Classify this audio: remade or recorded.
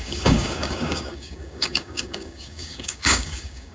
remade